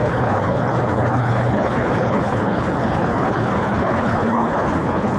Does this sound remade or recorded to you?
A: remade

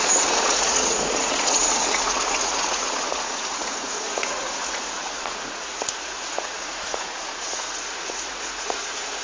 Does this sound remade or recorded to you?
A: remade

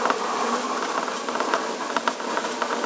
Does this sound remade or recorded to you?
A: recorded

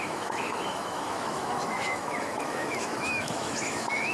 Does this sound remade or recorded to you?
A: remade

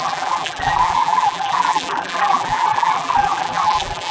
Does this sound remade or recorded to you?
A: remade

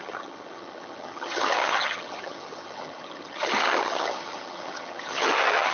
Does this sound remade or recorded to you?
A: remade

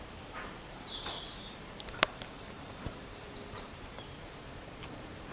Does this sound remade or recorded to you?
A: remade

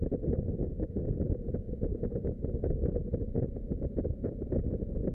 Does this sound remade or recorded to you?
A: recorded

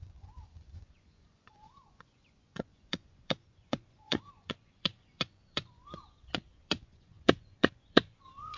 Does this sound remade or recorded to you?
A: remade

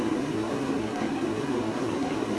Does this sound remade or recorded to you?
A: remade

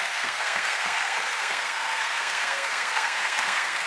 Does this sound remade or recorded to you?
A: remade